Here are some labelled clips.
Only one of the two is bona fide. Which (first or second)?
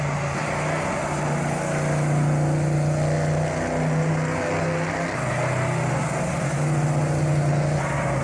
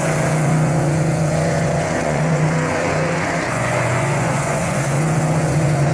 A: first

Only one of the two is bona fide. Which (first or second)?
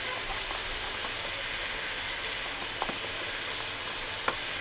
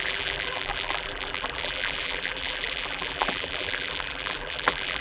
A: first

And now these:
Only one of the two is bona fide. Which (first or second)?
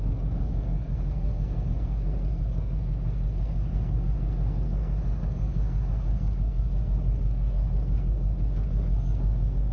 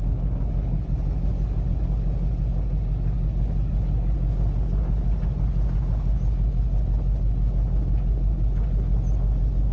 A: second